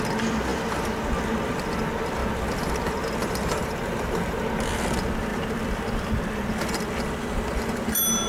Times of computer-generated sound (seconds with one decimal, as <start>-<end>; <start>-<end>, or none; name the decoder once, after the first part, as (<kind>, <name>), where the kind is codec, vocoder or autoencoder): 3.6-4.4 (vocoder, BigVGAN v2)